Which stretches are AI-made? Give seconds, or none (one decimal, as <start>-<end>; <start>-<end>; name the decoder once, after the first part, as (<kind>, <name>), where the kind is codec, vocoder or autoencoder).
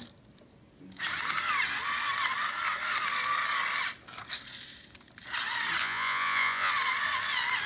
5.8-6.7 (vocoder, Vocos)